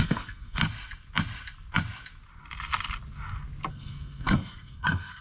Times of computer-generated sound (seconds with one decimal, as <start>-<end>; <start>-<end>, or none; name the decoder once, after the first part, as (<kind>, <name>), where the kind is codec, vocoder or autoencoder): 0.0-0.6 (codec, SNAC); 3.7-5.2